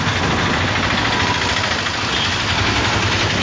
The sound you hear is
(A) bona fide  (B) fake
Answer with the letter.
A